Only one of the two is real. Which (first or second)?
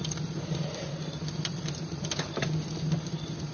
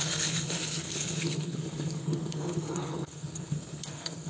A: first